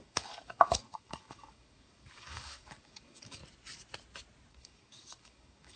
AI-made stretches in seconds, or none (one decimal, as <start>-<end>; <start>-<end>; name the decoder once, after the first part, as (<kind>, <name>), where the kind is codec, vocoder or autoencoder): 0.0-3.4 (codec, DAC); 4.5-5.8